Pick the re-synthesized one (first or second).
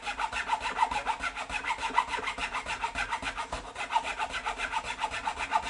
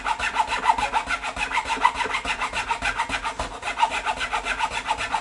first